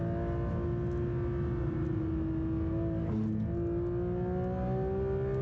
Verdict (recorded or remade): recorded